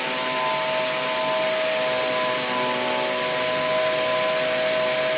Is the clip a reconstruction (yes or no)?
no